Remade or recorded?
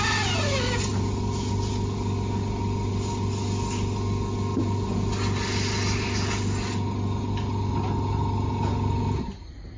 recorded